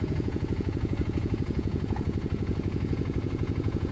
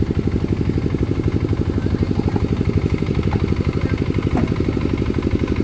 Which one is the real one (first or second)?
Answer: second